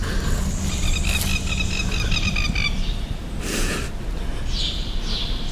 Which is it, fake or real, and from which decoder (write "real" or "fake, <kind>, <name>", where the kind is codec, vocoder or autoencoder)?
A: real